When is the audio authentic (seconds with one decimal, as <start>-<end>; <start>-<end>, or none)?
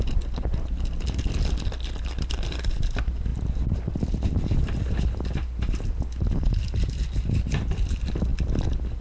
0.0-9.0